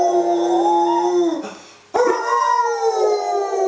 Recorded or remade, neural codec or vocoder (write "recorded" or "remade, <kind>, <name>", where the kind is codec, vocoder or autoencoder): recorded